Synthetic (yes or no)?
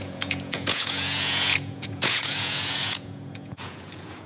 yes